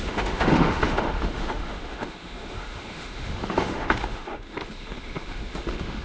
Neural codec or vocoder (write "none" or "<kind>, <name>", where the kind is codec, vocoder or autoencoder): autoencoder, DAC-VAE